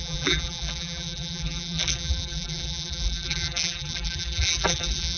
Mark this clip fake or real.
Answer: fake